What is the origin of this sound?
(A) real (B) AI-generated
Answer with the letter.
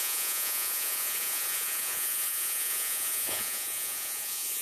B